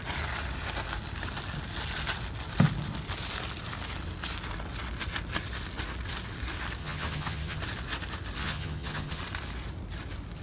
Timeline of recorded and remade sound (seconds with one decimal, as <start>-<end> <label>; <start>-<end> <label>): 0.0-6.8 recorded; 6.8-7.6 remade; 7.6-8.4 recorded; 8.4-9.2 remade; 9.2-10.4 recorded